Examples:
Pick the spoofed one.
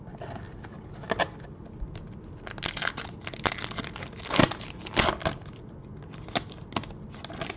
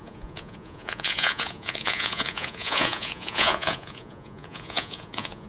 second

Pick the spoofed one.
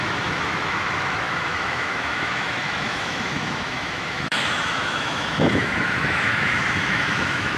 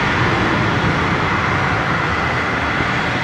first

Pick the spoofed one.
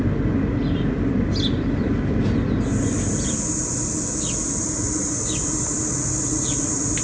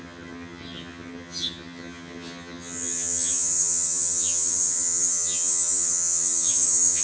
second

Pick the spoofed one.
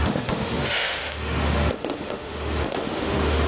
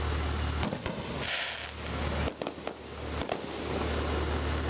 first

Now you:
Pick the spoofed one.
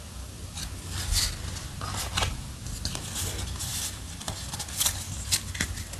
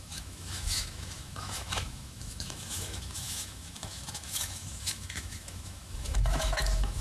second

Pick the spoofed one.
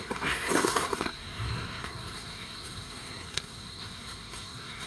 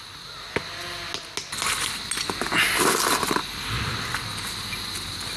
first